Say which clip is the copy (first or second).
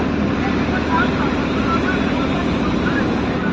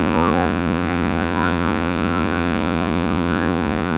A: second